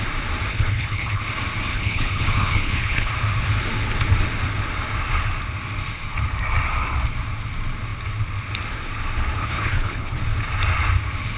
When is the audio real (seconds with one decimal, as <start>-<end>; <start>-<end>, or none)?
0.0-0.5; 1.2-1.7; 3.1-9.4; 10.2-11.4